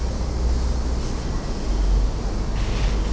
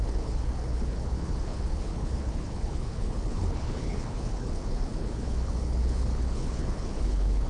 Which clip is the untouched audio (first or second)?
first